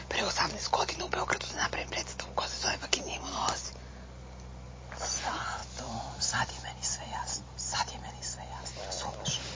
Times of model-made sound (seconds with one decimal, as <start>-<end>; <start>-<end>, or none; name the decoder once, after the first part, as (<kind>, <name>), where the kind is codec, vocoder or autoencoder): none